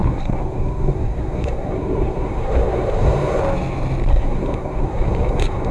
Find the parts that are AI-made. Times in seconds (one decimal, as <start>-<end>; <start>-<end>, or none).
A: 0.0-3.4; 4.1-5.7